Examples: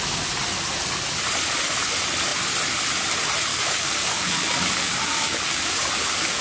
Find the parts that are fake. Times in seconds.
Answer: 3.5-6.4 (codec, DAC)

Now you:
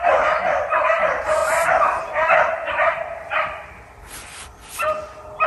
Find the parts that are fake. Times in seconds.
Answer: none

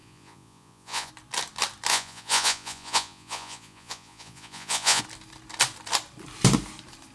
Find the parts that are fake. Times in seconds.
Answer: 0.0-1.1 (vocoder, Vocos); 1.9-5.0

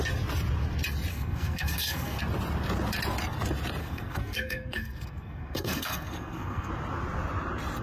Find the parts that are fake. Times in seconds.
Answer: 1.1-2.2 (codec, SNAC); 3.8-6.7